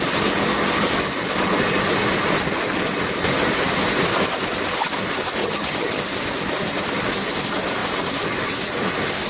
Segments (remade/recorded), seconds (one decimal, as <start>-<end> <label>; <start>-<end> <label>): 0.0-5.4 recorded; 5.4-6.0 remade; 6.0-9.3 recorded